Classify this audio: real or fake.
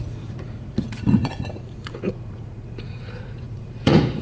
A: fake